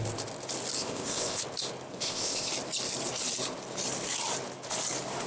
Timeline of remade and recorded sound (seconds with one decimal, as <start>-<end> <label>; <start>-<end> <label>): 0.0-0.8 recorded; 0.8-1.4 remade; 1.4-1.9 recorded; 1.9-2.5 remade; 2.5-5.3 recorded